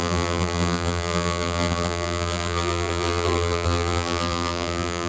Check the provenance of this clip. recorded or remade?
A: remade